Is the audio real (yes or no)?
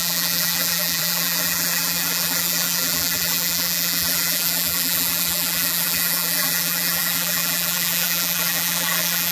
no